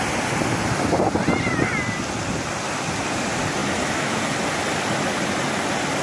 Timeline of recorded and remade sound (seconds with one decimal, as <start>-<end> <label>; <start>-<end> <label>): 0.0-3.6 recorded; 3.6-4.2 remade; 4.2-6.0 recorded